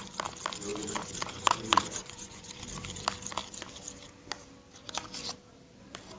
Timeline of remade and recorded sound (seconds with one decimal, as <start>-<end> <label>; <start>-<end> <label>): 0.0-0.7 recorded; 0.7-2.5 remade; 2.5-6.2 recorded

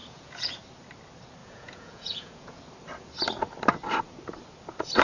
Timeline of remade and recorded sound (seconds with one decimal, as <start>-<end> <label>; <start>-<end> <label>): 0.0-0.6 remade; 0.6-1.4 recorded; 1.4-2.6 remade; 2.6-5.0 recorded

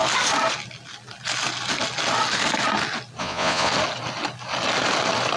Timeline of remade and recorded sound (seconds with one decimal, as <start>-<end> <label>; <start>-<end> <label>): 0.0-3.2 recorded; 3.2-3.7 remade; 3.7-5.4 recorded

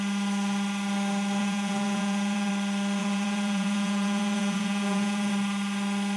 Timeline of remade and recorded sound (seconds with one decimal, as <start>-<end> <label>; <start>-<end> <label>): 0.0-1.4 recorded; 1.4-2.5 remade; 2.5-3.0 recorded; 3.0-5.3 remade; 5.3-6.2 recorded

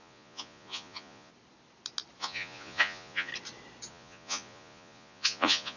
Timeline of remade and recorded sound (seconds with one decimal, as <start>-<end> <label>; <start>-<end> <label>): 0.0-1.3 remade; 1.3-2.2 recorded; 2.2-3.3 remade; 3.3-3.9 recorded; 3.9-5.8 remade